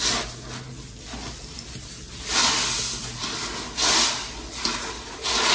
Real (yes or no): yes